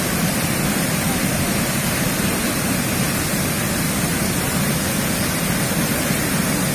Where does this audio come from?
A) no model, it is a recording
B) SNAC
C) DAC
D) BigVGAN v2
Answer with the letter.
A